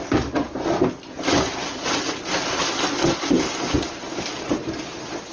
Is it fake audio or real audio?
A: real